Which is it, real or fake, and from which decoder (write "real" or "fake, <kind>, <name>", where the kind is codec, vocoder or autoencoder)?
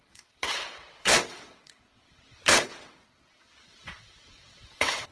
fake, vocoder, WaveNeXt